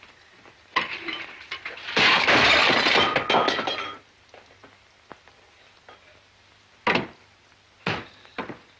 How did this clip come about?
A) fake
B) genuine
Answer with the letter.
B